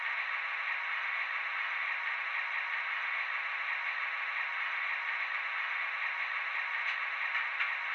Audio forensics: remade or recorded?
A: recorded